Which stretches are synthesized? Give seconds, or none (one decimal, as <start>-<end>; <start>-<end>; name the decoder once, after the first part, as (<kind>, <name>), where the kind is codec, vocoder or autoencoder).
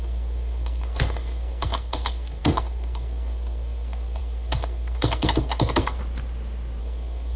0.0-6.0 (codec, SNAC); 6.8-7.4